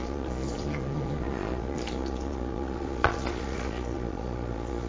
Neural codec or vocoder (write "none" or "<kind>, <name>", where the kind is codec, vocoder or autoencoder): vocoder, Vocos